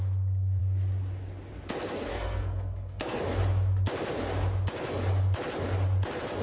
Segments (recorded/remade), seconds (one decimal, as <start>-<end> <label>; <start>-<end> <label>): 0.0-2.1 recorded; 2.1-3.2 remade; 3.2-6.4 recorded

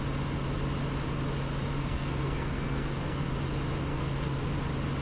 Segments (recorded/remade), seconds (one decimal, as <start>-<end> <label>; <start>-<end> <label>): 0.0-1.7 recorded; 1.7-3.3 remade; 3.3-3.9 recorded; 3.9-4.4 remade; 4.4-5.0 recorded

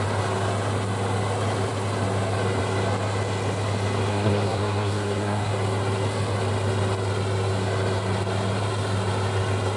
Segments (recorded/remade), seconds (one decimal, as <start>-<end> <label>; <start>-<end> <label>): 0.0-4.1 recorded; 4.1-5.5 remade; 5.5-9.8 recorded

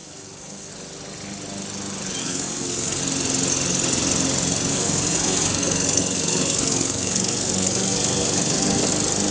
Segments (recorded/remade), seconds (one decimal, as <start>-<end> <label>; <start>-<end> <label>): 0.0-0.7 remade; 0.7-2.2 recorded; 2.2-3.0 remade; 3.0-4.7 recorded; 4.7-8.9 remade; 8.9-9.3 recorded